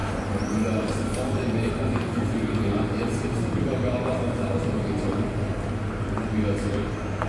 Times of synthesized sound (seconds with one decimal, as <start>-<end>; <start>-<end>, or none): none